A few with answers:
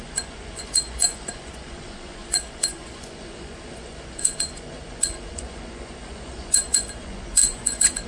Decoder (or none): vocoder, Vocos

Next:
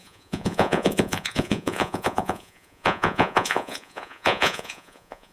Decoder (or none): vocoder, Vocos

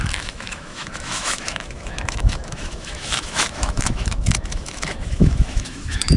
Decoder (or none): autoencoder, DAC-VAE